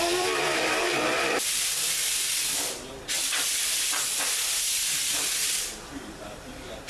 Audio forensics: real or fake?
fake